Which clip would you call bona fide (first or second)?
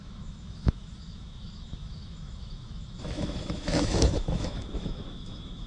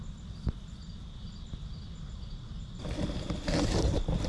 second